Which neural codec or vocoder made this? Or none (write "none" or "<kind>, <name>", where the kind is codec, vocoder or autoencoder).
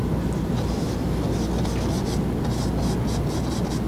none